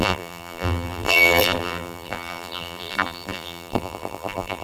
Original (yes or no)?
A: no